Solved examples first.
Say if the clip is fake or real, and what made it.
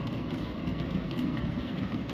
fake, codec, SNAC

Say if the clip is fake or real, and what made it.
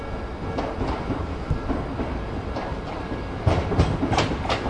real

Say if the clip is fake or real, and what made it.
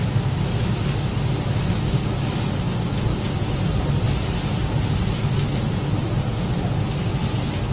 real